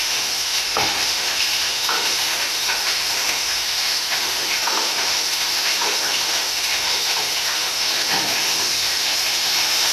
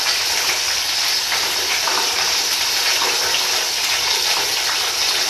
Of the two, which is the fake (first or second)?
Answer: first